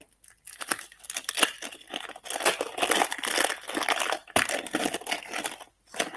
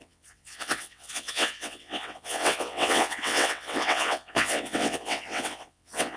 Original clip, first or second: first